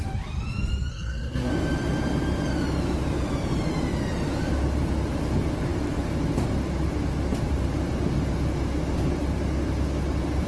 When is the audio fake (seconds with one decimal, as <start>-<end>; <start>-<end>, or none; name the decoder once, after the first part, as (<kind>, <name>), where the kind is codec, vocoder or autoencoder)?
0.9-1.5 (codec, SNAC)